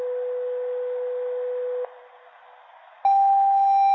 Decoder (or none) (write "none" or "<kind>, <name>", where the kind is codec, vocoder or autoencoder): none